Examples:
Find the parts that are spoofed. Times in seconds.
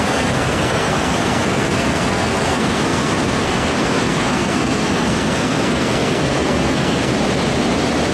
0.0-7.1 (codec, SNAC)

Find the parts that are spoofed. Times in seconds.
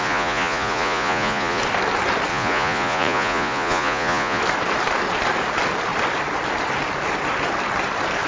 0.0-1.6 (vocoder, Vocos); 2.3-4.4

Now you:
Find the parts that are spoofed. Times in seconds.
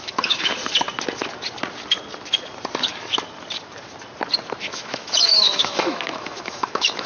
0.0-0.5 (autoencoder, DAC-VAE); 4.7-7.1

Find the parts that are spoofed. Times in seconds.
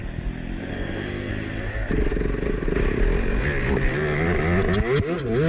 0.7-1.3 (codec, SNAC)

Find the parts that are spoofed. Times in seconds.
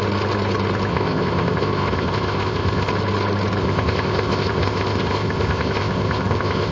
0.9-2.9 (codec, ZipCodec); 3.6-6.7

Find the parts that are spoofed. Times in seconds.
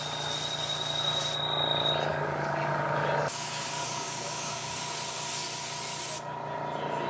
2.1-4.8 (codec, DAC)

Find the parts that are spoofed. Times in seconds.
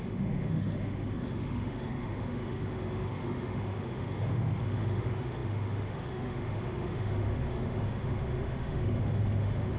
0.0-9.8 (autoencoder, DAC-VAE)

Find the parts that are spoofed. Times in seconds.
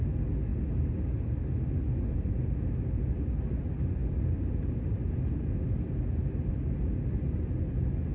none